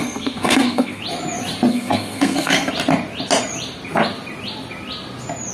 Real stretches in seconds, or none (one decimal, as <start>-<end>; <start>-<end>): 1.0-1.7; 2.7-5.5